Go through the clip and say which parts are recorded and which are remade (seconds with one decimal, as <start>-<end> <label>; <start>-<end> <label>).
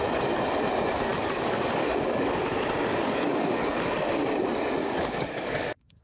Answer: 0.0-1.1 recorded; 1.1-2.4 remade; 2.4-2.9 recorded; 2.9-3.6 remade; 3.6-4.8 recorded; 4.8-6.0 remade